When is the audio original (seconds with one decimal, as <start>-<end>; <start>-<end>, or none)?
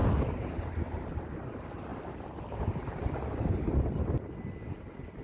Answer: 0.0-1.9